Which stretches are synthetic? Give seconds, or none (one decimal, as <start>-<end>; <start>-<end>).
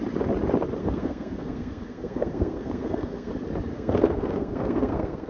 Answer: 0.8-3.3; 3.7-5.3